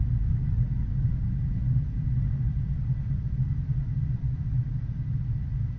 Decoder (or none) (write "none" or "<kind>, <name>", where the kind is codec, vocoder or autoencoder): none